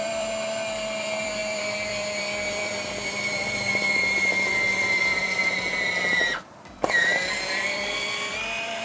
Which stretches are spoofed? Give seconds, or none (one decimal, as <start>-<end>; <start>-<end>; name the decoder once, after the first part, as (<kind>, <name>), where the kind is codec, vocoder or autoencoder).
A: 0.0-8.8 (vocoder, BigVGAN v2)